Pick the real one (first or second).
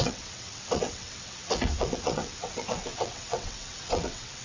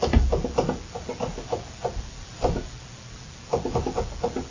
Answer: second